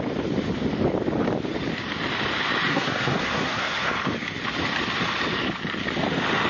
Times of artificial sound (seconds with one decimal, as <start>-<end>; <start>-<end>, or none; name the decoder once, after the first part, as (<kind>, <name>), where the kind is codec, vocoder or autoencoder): 2.7-3.9 (codec, SNAC)